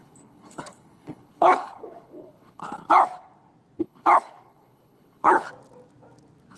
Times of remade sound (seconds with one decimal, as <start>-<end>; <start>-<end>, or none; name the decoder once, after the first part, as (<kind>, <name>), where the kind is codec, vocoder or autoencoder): 0.0-2.9 (codec, HILCodec); 3.8-5.5